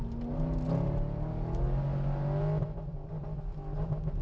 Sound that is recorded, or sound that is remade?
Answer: recorded